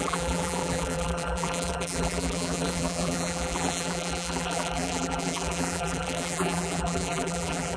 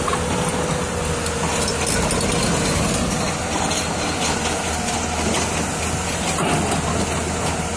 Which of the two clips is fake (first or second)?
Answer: first